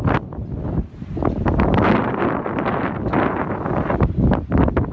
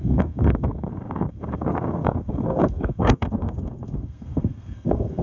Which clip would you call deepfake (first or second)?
second